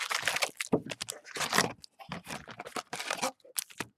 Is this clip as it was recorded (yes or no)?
yes